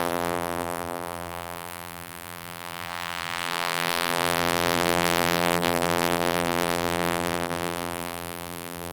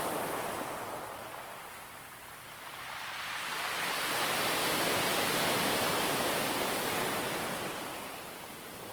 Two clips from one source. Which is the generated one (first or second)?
first